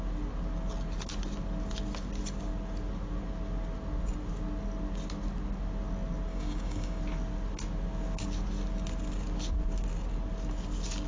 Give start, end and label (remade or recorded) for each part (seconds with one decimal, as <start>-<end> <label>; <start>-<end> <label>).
0.0-6.3 recorded; 6.3-7.0 remade; 7.0-11.1 recorded